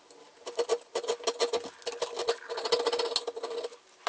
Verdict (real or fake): real